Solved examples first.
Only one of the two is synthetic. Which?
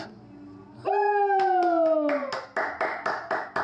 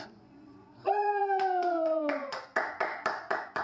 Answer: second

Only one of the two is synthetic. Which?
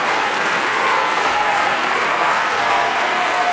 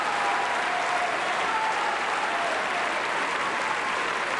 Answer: first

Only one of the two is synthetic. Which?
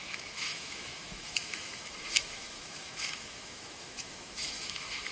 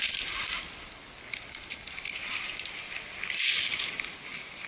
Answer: first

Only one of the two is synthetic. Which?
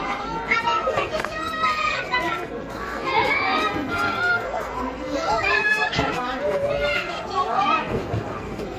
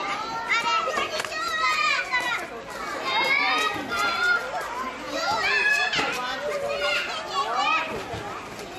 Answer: first